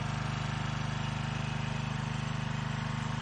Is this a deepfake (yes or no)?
no